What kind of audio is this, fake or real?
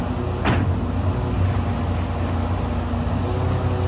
real